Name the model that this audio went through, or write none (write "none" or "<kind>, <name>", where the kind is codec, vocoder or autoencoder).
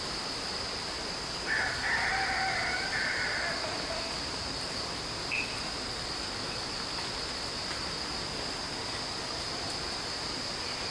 none